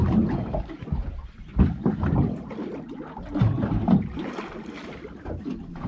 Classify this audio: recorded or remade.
recorded